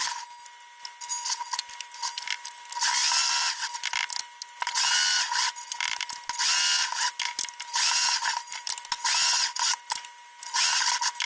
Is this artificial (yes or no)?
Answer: no